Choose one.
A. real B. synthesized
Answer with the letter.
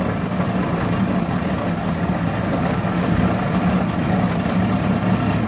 A